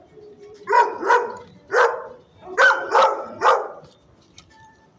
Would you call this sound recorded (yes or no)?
no